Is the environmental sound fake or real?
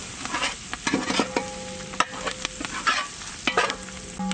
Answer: real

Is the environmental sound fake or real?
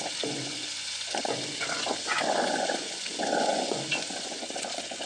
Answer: fake